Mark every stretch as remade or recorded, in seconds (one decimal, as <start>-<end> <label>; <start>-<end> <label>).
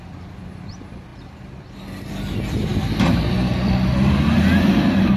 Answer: 0.0-5.2 recorded